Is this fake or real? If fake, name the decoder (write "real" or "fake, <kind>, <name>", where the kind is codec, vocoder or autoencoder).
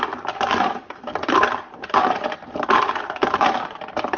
fake, vocoder, BigVGAN v2